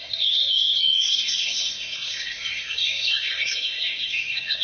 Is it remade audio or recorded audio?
remade